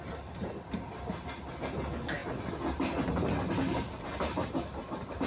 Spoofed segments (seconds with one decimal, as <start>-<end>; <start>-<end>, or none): none